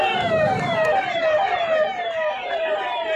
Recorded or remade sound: remade